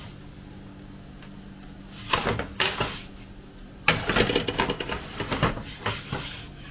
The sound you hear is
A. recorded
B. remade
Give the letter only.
A